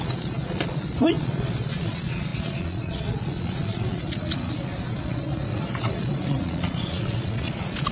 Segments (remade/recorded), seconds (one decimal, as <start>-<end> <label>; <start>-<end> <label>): 0.0-7.9 remade